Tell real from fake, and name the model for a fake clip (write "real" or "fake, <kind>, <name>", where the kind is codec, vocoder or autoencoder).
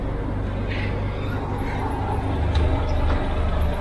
real